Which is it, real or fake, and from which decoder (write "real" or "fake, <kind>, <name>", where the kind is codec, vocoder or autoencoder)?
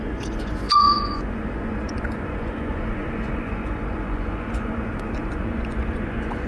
fake, vocoder, Vocos